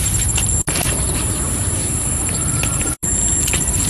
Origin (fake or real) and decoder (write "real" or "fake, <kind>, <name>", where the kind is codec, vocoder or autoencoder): fake, vocoder, BigVGAN v2